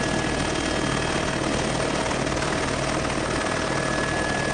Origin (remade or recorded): recorded